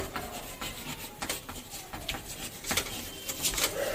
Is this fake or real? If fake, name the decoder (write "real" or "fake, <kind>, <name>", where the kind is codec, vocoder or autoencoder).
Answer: real